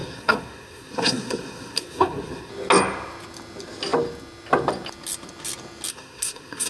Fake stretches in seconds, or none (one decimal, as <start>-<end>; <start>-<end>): 0.0-2.5; 5.9-6.7